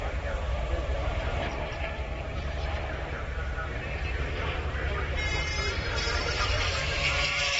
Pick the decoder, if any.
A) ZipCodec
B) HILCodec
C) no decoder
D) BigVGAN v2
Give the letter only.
D